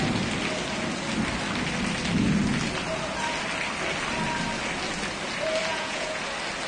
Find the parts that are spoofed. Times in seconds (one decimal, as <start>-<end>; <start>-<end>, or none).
5.7-6.2